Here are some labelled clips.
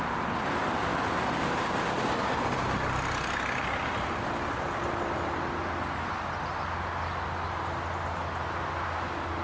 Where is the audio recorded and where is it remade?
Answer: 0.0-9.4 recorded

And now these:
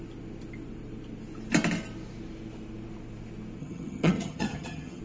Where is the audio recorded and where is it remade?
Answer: 0.0-3.6 recorded; 3.6-5.0 remade

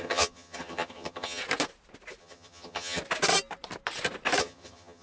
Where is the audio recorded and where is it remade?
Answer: 0.0-1.4 remade; 1.4-2.2 recorded; 2.2-3.0 remade; 3.0-4.4 recorded; 4.4-5.0 remade